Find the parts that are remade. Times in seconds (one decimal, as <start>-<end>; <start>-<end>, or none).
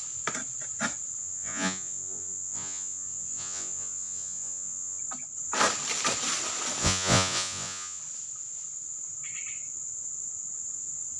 1.2-5.0; 6.8-8.0